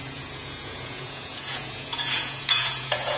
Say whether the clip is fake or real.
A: fake